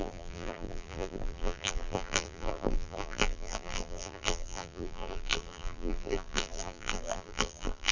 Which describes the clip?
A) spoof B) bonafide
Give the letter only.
A